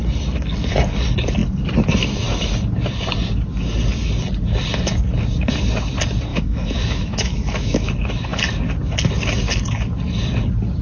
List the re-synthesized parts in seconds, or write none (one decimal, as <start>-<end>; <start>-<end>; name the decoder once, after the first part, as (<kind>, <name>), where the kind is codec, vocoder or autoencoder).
6.3-7.9 (autoencoder, DAC-VAE)